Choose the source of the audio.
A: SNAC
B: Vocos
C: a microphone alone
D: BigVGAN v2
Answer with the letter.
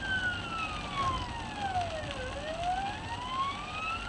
C